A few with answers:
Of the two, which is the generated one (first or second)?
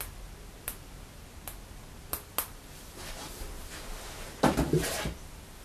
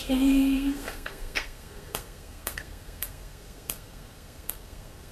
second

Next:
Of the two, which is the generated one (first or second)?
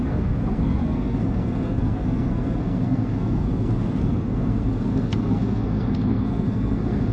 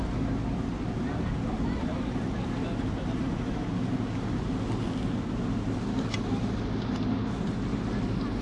first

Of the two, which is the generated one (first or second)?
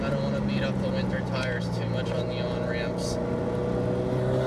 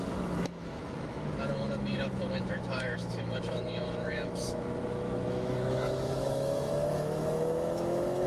second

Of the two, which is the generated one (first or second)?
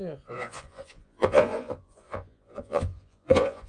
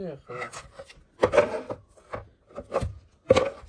first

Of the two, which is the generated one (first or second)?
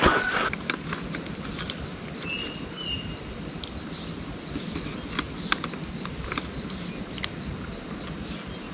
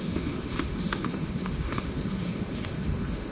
second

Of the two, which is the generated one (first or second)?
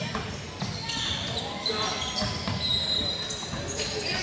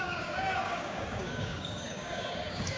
second